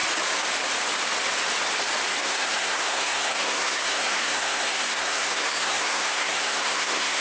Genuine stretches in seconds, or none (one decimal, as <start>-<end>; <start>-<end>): 0.0-2.2